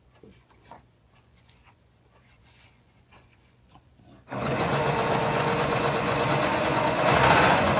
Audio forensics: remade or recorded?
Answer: remade